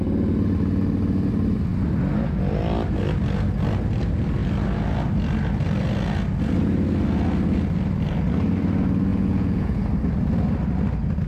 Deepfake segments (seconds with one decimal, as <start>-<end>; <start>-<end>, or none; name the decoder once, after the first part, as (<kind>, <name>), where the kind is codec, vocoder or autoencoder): 9.1-9.8 (vocoder, Vocos)